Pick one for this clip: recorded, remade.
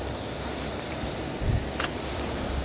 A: recorded